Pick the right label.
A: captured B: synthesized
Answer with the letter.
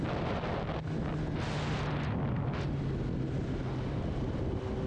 A